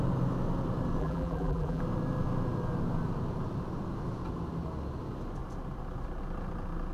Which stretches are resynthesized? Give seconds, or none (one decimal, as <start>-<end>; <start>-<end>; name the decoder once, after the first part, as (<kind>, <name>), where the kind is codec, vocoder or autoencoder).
1.0-1.8 (vocoder, BigVGAN v2)